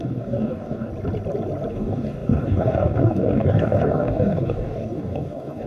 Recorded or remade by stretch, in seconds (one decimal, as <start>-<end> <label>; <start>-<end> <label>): 0.0-0.9 remade; 0.9-1.7 recorded; 1.7-5.7 remade